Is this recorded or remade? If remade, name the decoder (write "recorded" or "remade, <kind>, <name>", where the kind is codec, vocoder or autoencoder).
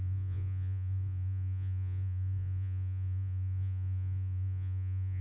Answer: remade, vocoder, Vocos